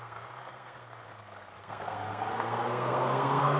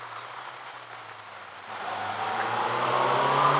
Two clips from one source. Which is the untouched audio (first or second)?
second